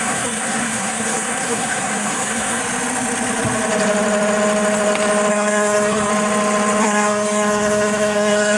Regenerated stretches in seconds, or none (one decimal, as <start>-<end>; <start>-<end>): 0.0-2.6; 5.3-6.1; 6.8-8.6